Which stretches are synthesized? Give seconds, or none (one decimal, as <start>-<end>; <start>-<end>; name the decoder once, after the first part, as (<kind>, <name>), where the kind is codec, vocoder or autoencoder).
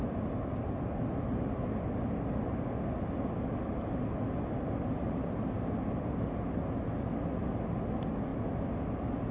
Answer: none